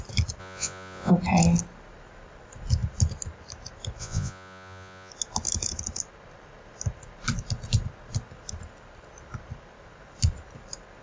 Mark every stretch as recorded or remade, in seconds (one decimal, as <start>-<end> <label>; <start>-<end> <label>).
0.0-0.4 recorded; 0.4-1.1 remade; 1.1-4.0 recorded; 4.0-5.1 remade; 5.1-11.0 recorded